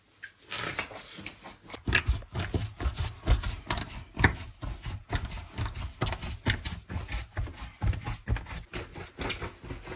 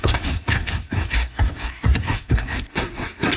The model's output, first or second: second